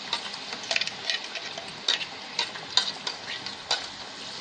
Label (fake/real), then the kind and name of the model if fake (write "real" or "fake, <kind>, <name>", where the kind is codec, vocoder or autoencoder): real